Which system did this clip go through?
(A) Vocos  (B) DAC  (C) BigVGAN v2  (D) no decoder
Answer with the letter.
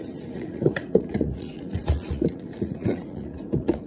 A